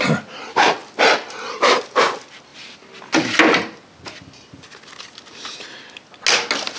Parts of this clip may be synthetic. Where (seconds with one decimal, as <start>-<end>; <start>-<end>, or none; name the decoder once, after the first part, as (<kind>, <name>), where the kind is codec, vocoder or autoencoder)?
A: none